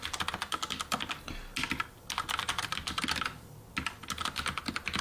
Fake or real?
real